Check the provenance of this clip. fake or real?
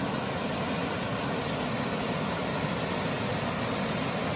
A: real